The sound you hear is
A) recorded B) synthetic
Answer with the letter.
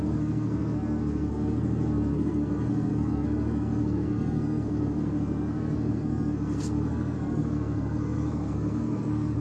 B